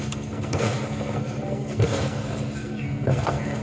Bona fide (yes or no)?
no